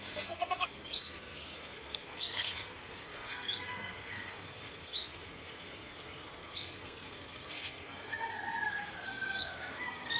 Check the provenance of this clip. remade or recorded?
remade